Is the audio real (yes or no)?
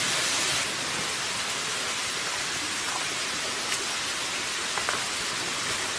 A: yes